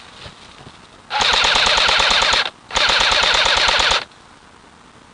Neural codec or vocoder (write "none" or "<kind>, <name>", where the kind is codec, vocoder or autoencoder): none